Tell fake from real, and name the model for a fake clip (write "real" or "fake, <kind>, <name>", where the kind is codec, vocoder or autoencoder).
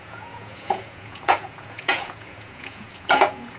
fake, vocoder, Vocos